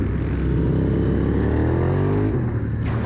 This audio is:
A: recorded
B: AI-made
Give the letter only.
A